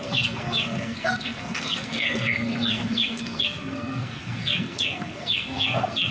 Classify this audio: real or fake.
fake